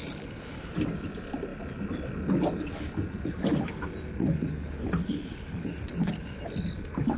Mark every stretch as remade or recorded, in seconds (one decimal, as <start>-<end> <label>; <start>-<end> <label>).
0.0-0.7 remade; 0.7-4.2 recorded; 4.2-6.4 remade; 6.4-7.2 recorded